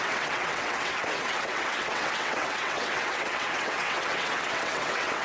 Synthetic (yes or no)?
yes